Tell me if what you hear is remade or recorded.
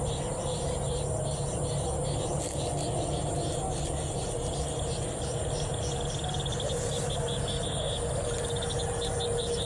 recorded